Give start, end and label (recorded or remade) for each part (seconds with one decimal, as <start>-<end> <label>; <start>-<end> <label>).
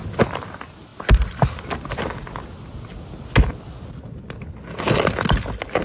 0.0-5.8 recorded